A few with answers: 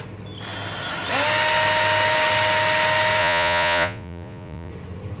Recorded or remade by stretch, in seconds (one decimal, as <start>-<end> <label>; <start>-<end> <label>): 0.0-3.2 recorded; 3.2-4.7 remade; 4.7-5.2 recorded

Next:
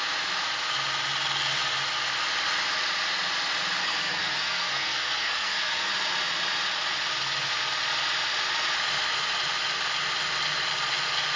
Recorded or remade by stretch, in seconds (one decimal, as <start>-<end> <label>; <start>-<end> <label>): 0.0-3.8 recorded; 3.8-5.9 remade; 5.9-11.4 recorded

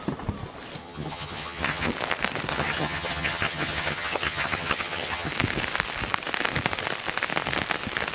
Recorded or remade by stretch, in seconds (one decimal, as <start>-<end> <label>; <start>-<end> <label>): 0.0-0.8 recorded; 0.8-1.9 remade; 1.9-2.5 recorded; 2.5-5.3 remade; 5.3-8.1 recorded

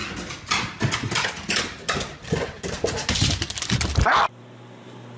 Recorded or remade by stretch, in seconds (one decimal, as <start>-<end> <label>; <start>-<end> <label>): 0.0-5.2 recorded

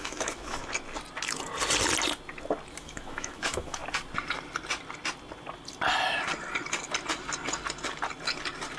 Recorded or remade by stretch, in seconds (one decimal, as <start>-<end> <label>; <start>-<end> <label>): 0.0-0.6 remade; 0.6-2.8 recorded; 2.8-3.8 remade; 3.8-8.8 recorded

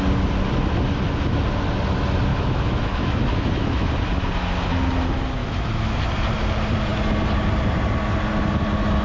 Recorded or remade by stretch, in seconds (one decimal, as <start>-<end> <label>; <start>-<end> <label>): 0.0-2.3 recorded; 2.3-3.9 remade; 3.9-5.4 recorded; 5.4-6.0 remade; 6.0-9.0 recorded